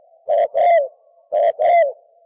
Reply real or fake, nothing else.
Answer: real